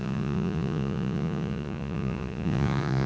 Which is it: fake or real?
fake